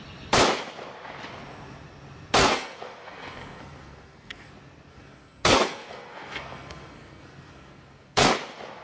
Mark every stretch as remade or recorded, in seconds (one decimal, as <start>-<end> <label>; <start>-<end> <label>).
0.0-2.4 recorded; 2.4-4.5 remade; 4.5-4.9 recorded; 4.9-8.3 remade; 8.3-8.8 recorded